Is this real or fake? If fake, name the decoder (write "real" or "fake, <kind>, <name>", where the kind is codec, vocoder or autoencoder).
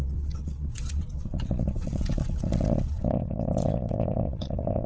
fake, vocoder, WaveNeXt